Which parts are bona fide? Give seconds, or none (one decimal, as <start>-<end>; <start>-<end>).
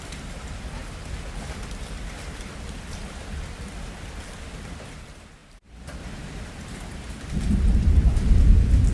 none